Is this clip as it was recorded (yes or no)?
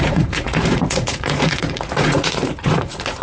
no